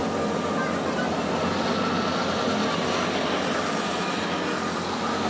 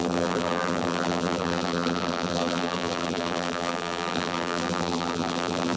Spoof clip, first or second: second